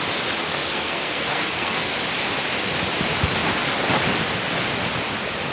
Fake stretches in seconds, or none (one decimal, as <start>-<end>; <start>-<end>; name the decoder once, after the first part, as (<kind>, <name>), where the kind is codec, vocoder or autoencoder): 0.4-1.9 (codec, SNAC)